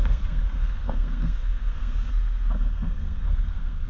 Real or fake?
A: fake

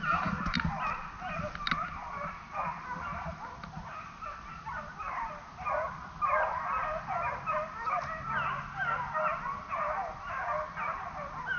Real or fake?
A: real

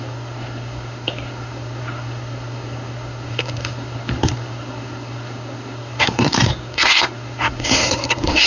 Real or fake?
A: fake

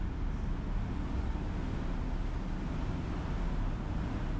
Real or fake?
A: real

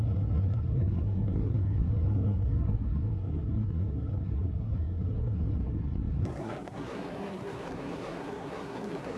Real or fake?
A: fake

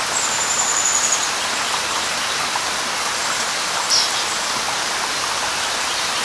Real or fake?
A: real